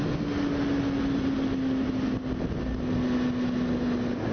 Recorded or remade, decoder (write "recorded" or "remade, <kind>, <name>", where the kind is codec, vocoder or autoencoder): recorded